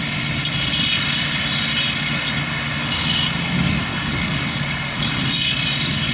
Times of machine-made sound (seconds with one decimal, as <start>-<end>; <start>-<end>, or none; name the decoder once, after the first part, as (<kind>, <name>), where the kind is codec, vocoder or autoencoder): 3.9-5.1 (codec, DAC)